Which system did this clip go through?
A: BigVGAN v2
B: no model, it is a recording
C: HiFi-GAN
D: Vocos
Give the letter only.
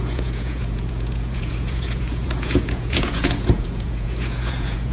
D